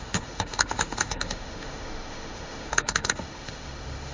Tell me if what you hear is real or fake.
fake